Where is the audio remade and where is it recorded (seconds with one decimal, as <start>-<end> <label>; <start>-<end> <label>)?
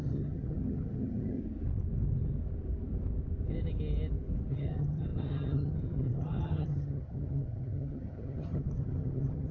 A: 0.0-1.4 remade; 1.4-4.5 recorded; 4.5-9.5 remade